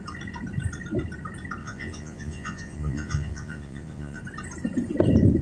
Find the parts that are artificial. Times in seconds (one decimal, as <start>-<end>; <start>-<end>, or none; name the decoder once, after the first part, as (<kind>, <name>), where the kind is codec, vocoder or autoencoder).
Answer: 1.6-4.2 (vocoder, Vocos)